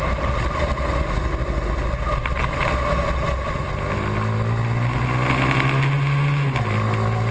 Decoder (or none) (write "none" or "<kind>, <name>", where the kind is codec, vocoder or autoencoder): none